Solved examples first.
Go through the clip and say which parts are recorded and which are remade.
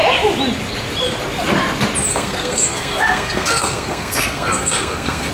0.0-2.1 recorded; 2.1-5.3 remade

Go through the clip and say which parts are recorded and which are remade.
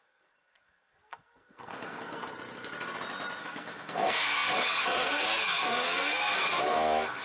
0.0-2.2 remade; 2.2-3.4 recorded; 3.4-7.2 remade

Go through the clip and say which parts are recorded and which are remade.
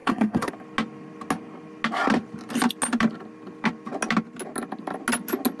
0.0-0.5 remade; 0.5-5.6 recorded